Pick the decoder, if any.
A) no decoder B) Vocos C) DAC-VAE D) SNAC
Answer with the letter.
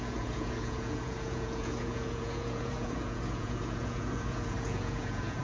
B